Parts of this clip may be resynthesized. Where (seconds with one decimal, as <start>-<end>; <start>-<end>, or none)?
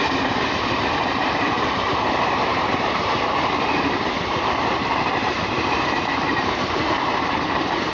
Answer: 0.0-7.9